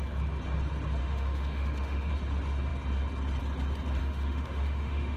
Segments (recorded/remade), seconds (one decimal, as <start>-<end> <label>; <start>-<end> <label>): 0.0-1.0 recorded; 1.0-2.1 remade; 2.1-4.0 recorded; 4.0-5.2 remade